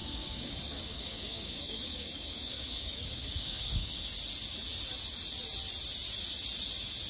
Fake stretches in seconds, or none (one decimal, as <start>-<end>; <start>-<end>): 0.0-4.1